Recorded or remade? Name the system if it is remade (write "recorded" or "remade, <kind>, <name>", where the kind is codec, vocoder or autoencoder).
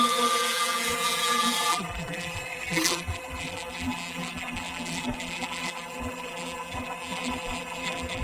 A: remade, vocoder, BigVGAN v2